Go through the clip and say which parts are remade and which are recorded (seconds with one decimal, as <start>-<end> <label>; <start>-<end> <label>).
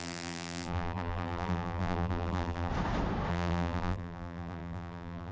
0.0-2.7 remade; 2.7-3.3 recorded; 3.3-5.3 remade